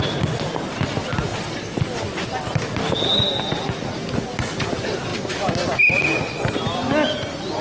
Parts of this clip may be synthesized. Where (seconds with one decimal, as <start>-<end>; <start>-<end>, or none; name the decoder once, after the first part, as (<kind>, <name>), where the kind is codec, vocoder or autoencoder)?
none